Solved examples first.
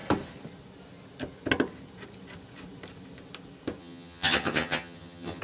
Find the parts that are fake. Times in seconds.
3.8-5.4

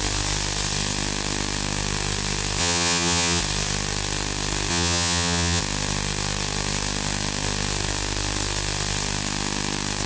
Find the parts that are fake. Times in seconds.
2.6-3.4; 4.7-5.6

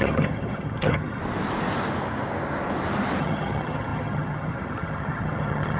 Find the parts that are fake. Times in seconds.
0.0-1.2; 3.2-5.8

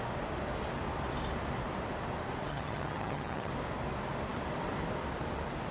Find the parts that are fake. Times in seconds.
2.5-3.5

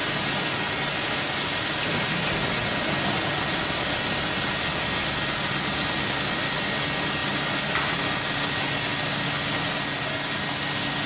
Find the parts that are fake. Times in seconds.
none

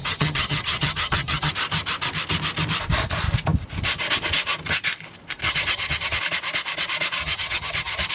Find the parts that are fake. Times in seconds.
0.0-1.5; 5.4-6.2; 7.2-8.1

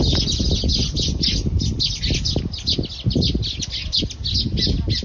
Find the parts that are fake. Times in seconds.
none

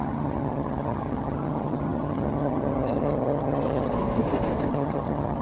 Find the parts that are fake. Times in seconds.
0.0-3.9; 4.7-5.4